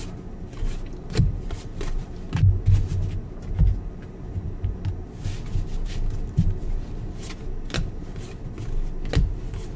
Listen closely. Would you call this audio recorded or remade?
recorded